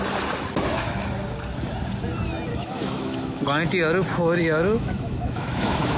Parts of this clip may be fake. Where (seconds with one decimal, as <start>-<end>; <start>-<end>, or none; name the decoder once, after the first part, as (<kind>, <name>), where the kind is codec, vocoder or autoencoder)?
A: 2.5-3.4 (autoencoder, DAC-VAE); 4.1-6.0